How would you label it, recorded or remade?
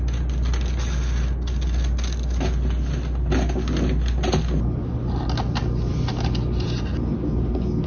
recorded